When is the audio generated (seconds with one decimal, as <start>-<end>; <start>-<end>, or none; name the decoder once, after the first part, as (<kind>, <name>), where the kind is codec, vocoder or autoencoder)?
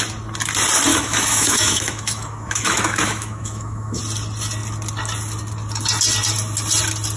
0.9-4.0 (autoencoder, DAC-VAE)